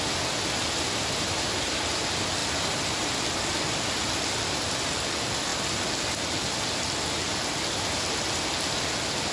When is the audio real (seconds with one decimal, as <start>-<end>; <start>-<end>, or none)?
0.0-9.3